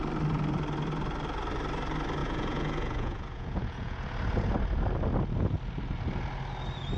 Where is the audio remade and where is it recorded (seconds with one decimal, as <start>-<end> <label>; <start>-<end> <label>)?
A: 0.0-2.2 recorded; 2.2-4.0 remade; 4.0-7.0 recorded